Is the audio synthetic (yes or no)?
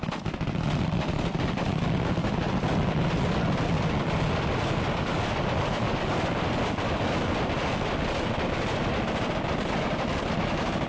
no